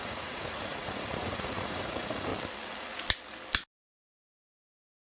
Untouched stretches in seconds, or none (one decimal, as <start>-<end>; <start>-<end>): 2.3-5.1